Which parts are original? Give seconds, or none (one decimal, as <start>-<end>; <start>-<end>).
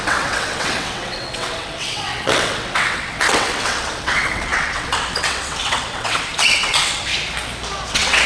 7.1-7.9